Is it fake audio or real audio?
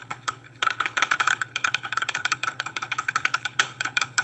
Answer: fake